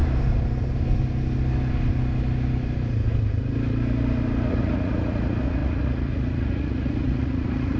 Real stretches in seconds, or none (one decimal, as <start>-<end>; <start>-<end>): 0.0-4.5